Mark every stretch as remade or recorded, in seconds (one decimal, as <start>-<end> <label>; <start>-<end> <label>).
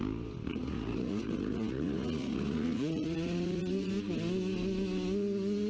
0.0-0.5 recorded; 0.5-3.9 remade; 3.9-5.7 recorded